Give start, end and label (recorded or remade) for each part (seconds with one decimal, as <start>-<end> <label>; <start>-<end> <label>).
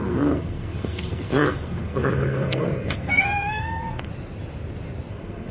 0.0-4.1 remade; 4.1-5.1 recorded; 5.1-5.5 remade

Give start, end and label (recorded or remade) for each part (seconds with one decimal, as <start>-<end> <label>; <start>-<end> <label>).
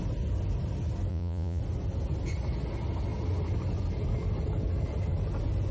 0.0-1.1 recorded; 1.1-1.6 remade; 1.6-5.7 recorded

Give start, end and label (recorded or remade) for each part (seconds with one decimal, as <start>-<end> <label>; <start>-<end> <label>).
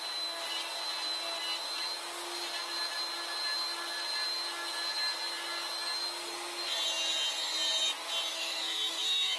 0.0-8.3 recorded; 8.3-9.4 remade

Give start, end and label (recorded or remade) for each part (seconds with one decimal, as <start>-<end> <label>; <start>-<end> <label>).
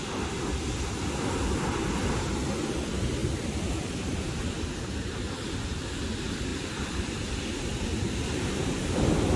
0.0-9.4 recorded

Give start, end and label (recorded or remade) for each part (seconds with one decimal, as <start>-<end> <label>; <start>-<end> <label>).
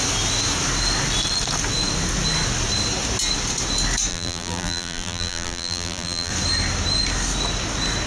0.0-4.1 recorded; 4.1-6.3 remade; 6.3-8.1 recorded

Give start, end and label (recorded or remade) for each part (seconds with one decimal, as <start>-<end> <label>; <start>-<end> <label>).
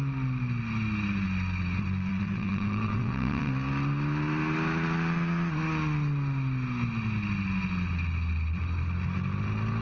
0.0-2.1 recorded; 2.1-3.5 remade; 3.5-9.8 recorded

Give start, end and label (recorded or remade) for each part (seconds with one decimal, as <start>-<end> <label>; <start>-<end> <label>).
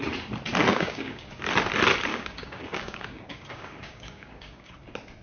0.0-0.7 recorded; 0.7-1.4 remade; 1.4-2.1 recorded; 2.1-4.7 remade; 4.7-5.2 recorded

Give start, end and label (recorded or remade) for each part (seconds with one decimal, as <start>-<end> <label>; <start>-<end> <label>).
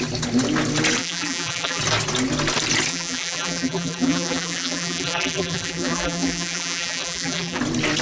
0.0-1.0 recorded; 1.0-1.8 remade; 1.8-2.9 recorded; 2.9-7.6 remade; 7.6-8.0 recorded